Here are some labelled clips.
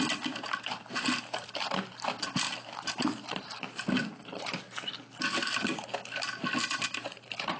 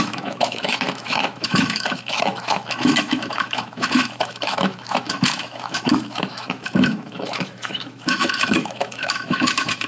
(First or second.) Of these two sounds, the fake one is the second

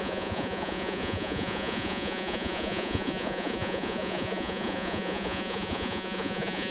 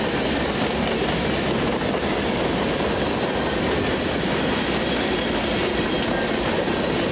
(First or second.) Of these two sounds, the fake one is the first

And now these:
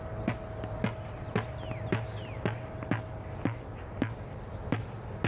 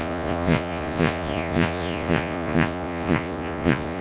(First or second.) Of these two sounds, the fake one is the second